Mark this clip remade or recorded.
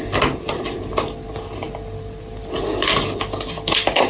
recorded